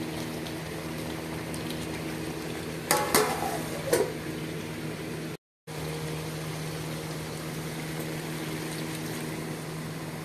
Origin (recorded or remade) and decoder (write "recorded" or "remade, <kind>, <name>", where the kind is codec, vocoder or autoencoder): recorded